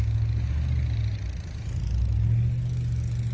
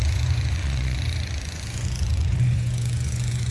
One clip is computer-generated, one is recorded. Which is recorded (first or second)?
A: first